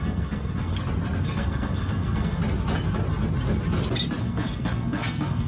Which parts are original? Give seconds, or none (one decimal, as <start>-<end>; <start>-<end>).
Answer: 0.7-1.2; 2.4-4.2